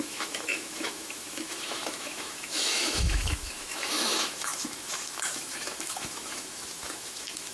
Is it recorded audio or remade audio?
remade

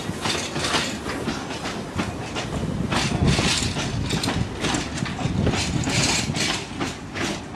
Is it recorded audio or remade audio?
recorded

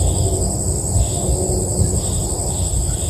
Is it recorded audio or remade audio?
recorded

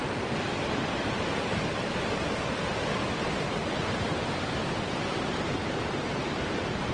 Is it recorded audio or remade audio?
remade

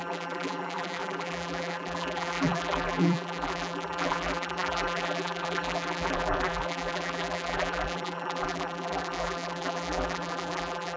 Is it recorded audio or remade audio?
remade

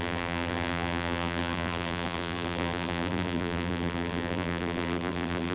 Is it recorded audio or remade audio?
remade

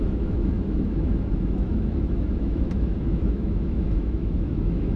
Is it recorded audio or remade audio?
remade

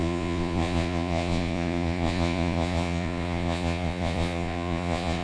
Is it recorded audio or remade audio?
remade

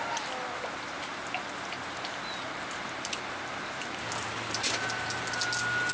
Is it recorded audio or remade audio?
recorded